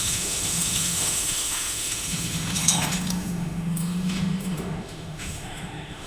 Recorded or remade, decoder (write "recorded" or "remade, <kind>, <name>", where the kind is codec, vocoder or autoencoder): remade, autoencoder, DAC-VAE